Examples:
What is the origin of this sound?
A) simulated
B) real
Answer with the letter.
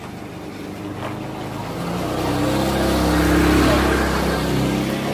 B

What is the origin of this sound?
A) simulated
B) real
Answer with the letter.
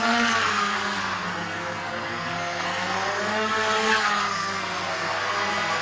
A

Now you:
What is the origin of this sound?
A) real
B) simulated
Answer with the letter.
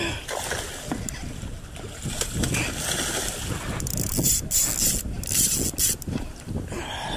A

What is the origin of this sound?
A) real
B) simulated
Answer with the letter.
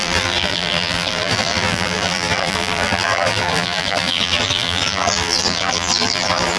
B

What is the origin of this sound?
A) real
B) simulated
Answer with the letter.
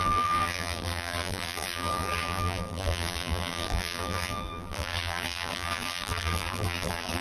B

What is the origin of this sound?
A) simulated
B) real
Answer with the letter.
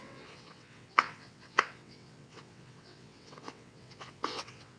A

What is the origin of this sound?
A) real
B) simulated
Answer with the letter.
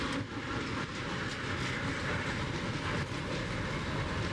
A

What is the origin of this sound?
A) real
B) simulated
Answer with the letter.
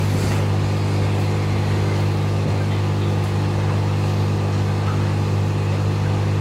A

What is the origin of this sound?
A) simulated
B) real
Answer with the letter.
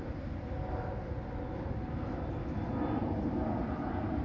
B